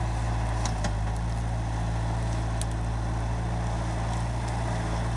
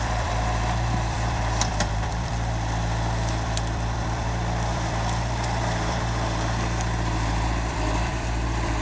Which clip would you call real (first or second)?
first